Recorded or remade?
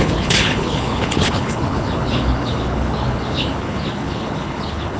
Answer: remade